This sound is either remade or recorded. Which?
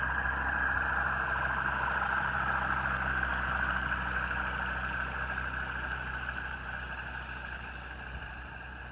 recorded